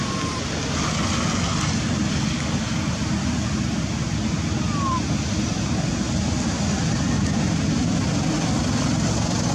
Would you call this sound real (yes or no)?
yes